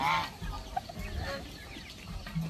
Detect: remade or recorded recorded